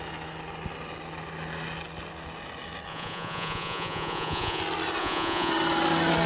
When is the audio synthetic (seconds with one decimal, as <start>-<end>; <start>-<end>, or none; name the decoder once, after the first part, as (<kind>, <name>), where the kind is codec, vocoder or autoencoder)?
2.9-4.6 (vocoder, Vocos); 5.0-5.5